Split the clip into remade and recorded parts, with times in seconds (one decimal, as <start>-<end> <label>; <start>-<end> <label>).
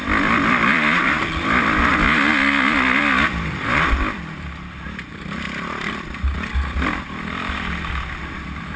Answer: 0.0-1.9 remade; 1.9-3.0 recorded; 3.0-8.8 remade